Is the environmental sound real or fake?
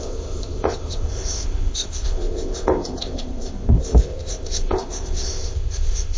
fake